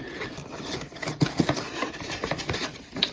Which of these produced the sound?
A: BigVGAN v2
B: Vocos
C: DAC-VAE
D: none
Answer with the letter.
A